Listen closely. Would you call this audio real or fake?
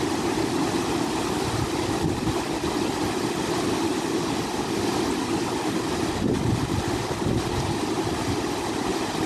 real